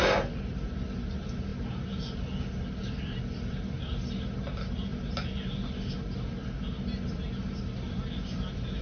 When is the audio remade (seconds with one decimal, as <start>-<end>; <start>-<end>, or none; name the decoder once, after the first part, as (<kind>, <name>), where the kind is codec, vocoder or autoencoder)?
none